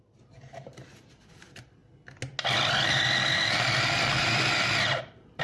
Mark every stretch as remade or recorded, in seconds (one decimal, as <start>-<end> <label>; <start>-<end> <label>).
0.0-1.8 remade; 1.8-5.0 recorded; 5.0-5.4 remade